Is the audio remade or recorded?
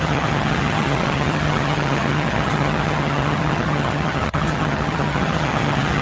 remade